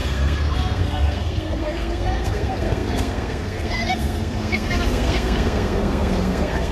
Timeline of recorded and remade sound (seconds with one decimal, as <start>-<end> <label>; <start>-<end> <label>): 0.0-6.7 remade